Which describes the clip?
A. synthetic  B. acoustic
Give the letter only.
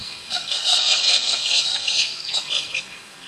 A